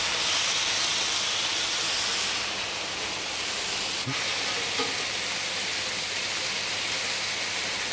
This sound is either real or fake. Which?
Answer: real